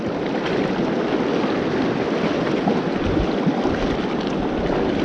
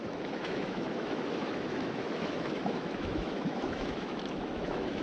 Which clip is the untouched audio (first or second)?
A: first